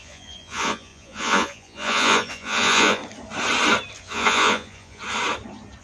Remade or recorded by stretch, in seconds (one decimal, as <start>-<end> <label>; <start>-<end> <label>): 0.0-3.0 remade; 3.0-4.0 recorded; 4.0-5.0 remade; 5.0-5.8 recorded